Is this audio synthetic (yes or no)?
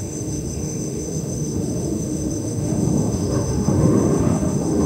yes